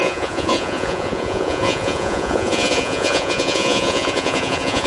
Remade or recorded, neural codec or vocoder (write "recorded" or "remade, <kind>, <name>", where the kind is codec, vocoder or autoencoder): remade, vocoder, Vocos